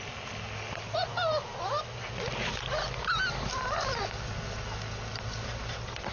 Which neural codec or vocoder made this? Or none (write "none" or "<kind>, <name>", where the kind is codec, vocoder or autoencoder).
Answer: none